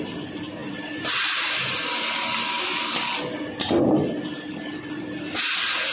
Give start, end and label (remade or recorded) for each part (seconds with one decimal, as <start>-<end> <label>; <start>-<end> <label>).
0.0-0.6 recorded; 0.6-1.5 remade; 1.5-5.9 recorded